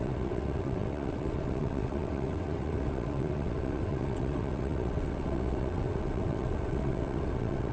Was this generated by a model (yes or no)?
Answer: yes